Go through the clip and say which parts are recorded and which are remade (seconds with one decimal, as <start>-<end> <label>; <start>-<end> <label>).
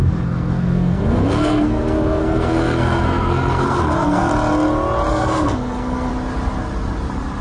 0.0-4.3 remade; 4.3-5.1 recorded; 5.1-6.1 remade; 6.1-7.4 recorded